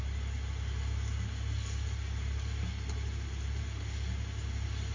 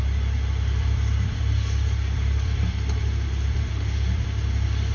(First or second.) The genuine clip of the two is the first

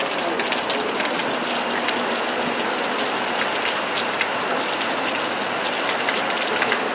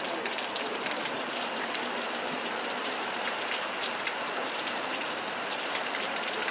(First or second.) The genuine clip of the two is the first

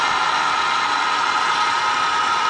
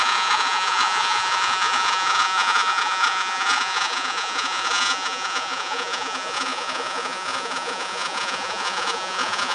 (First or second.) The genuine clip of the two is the first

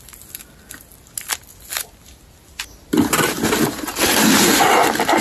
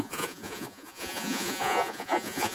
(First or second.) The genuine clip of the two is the first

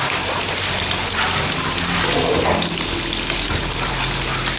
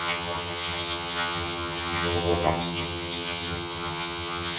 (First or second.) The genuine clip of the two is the first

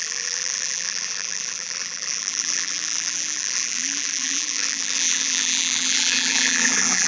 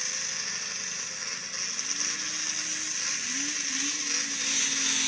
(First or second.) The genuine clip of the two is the second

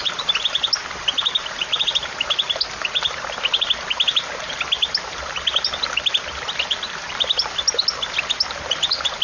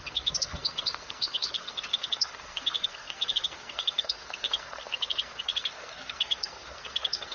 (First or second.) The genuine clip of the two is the first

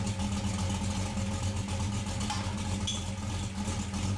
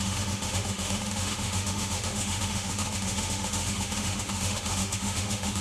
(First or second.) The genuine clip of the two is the first